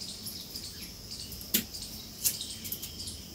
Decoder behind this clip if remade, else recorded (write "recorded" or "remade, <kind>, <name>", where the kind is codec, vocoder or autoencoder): recorded